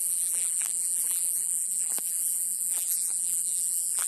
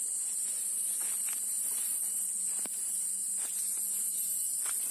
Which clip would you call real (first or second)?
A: second